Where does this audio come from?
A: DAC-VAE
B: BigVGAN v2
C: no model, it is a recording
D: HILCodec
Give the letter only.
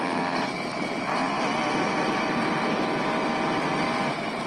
B